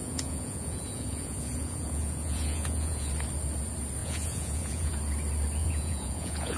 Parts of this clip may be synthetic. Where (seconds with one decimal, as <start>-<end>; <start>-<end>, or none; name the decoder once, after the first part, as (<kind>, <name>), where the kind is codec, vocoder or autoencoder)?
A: 0.0-3.1 (vocoder, Vocos); 4.0-4.9; 5.6-6.6